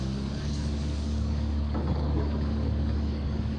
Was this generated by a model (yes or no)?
yes